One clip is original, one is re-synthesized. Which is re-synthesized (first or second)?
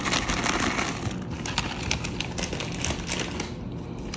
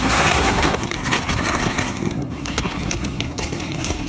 second